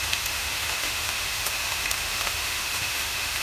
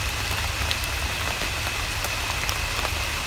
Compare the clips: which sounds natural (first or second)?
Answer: second